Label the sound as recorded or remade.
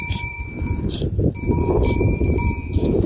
remade